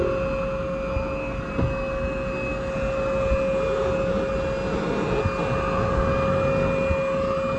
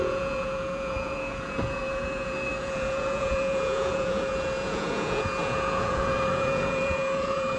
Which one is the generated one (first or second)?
second